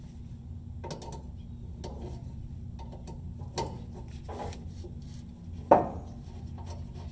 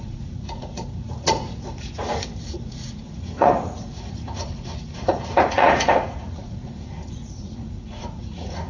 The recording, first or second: first